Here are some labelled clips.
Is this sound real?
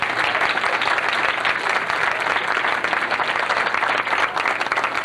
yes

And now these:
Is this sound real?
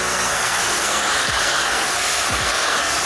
no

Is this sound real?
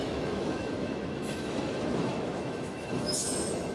no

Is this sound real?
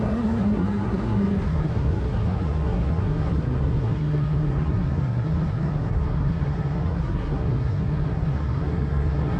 no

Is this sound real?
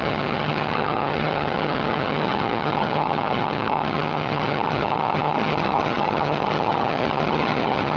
no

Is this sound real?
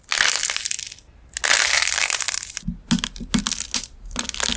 yes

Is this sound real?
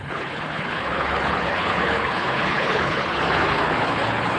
no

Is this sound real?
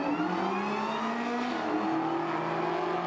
yes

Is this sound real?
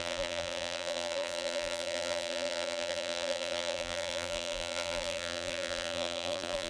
no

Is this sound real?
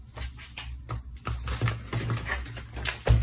yes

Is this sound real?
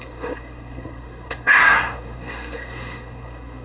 no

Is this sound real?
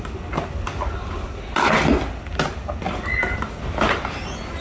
yes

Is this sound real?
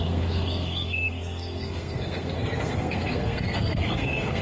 no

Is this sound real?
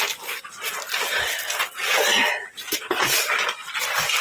yes